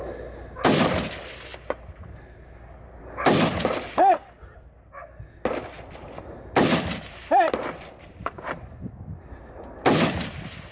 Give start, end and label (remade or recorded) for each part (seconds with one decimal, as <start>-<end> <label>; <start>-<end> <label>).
0.0-10.7 recorded